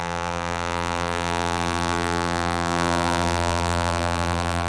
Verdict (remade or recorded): remade